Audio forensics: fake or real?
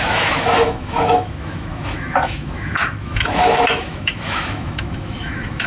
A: fake